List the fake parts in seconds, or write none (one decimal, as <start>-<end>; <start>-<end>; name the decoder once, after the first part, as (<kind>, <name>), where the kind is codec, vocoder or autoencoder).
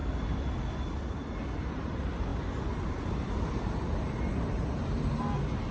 none